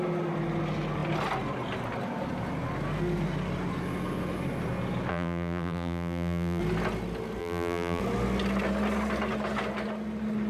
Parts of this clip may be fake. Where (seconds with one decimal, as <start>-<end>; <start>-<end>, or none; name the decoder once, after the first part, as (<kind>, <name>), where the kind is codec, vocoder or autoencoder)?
5.1-6.6 (vocoder, BigVGAN v2); 7.4-8.0